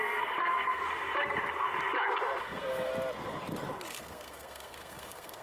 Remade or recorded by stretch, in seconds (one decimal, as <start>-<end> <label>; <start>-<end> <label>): 0.0-0.8 remade; 0.8-2.4 recorded; 2.4-2.9 remade; 2.9-3.9 recorded; 3.9-5.4 remade